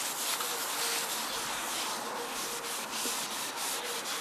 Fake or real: real